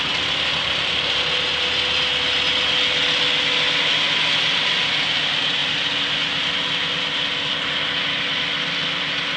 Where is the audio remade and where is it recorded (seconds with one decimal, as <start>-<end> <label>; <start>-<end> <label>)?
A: 0.0-9.4 recorded